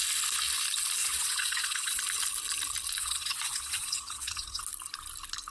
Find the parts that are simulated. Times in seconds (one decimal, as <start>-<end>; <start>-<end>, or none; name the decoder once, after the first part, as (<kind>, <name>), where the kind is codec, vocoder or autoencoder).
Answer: 1.0-2.0 (vocoder, Vocos); 3.0-4.6